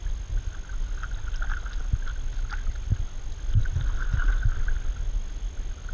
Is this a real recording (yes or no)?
yes